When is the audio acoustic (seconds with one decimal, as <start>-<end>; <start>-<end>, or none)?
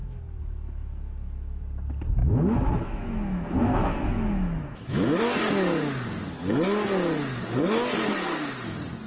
1.6-2.2; 5.2-9.1